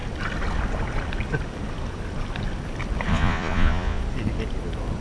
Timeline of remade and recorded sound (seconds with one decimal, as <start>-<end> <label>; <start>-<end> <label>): 0.0-3.1 recorded; 3.1-4.0 remade; 4.0-5.0 recorded